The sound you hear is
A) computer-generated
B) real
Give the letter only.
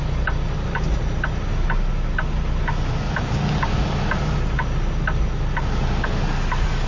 B